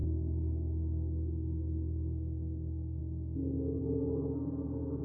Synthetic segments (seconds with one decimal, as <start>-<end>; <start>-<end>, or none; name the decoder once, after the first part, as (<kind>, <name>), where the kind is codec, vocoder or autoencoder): 0.0-3.0 (codec, SNAC); 3.8-5.0